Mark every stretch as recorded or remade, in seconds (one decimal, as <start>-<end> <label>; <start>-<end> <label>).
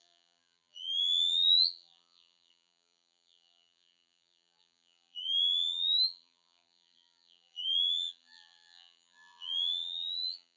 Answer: 0.0-10.6 remade